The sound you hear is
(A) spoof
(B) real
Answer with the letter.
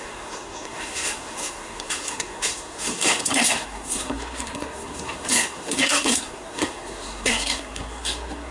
A